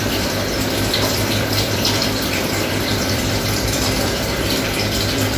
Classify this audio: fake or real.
fake